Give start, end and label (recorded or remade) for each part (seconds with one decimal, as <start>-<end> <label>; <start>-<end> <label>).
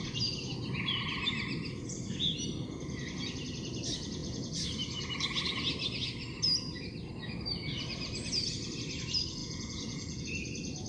0.0-9.4 recorded; 9.4-10.2 remade; 10.2-10.9 recorded